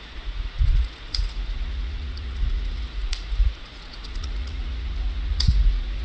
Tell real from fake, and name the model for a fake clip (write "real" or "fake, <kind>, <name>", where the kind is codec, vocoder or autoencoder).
fake, vocoder, Vocos